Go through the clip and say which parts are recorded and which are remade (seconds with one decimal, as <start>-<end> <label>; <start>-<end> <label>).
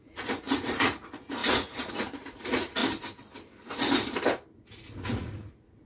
0.0-2.8 remade; 2.8-4.7 recorded; 4.7-5.9 remade